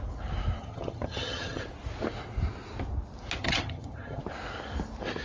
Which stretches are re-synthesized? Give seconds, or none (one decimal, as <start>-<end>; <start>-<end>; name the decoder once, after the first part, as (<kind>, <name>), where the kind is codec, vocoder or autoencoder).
0.6-1.6 (vocoder, HiFi-GAN); 3.4-4.2

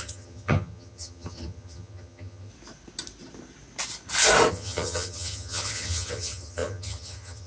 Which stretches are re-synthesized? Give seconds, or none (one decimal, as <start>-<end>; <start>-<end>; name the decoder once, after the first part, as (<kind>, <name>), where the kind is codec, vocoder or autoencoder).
0.0-2.5 (vocoder, HiFi-GAN); 4.5-7.5

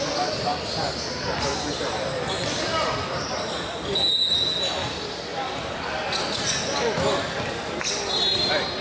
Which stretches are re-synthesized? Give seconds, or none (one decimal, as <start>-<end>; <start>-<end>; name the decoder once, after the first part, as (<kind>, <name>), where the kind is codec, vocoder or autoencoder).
none

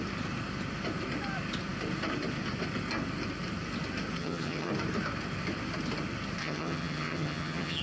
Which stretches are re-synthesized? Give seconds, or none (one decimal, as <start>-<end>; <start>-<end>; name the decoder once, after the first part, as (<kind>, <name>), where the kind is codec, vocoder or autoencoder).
4.2-4.7 (vocoder, HiFi-GAN); 6.4-7.8

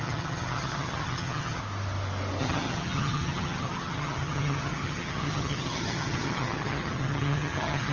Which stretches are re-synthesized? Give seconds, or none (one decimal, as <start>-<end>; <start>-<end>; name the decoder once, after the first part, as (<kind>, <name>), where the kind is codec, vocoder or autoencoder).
0.0-1.6 (vocoder, HiFi-GAN); 2.4-7.9